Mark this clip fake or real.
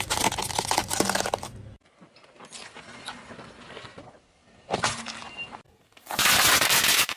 real